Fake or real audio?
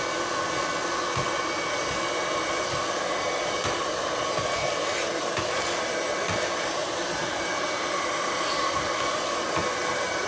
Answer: fake